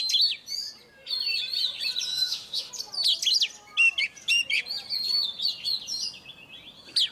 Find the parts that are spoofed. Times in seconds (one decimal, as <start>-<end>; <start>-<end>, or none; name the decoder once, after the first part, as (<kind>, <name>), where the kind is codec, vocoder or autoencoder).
2.1-2.7 (autoencoder, DAC-VAE)